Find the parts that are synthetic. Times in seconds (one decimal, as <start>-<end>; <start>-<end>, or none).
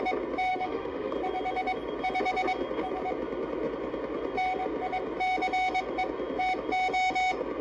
0.5-1.1